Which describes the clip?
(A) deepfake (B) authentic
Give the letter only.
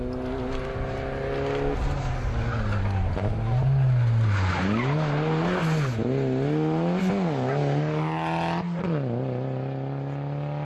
B